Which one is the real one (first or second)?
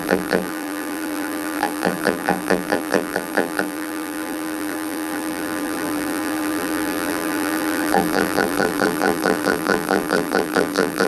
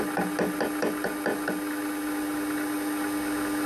second